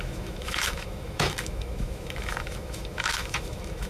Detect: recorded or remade remade